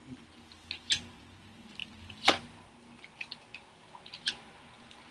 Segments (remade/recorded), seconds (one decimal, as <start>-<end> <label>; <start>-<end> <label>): 0.0-5.1 recorded

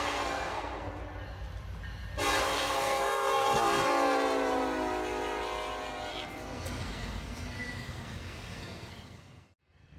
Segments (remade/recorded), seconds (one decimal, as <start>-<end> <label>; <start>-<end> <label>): 0.0-1.0 remade; 1.0-2.4 recorded; 2.4-3.9 remade; 3.9-6.1 recorded; 6.1-10.0 remade